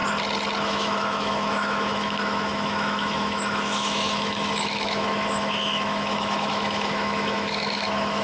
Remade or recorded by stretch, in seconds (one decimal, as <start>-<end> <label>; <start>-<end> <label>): 0.0-0.6 recorded; 0.6-8.2 remade